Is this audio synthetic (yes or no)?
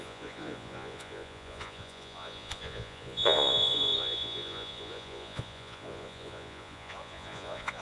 yes